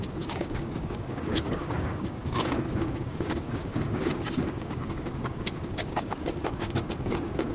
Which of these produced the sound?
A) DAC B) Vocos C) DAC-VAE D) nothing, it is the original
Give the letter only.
A